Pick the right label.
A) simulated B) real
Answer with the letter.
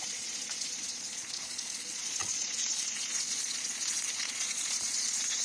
A